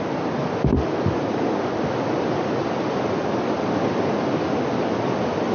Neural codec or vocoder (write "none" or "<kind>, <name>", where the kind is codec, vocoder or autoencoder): none